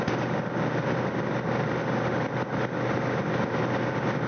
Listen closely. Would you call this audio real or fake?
real